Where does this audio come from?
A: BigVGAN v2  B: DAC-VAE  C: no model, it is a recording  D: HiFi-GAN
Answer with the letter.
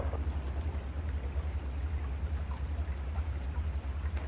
A